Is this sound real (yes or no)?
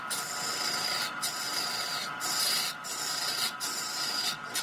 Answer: yes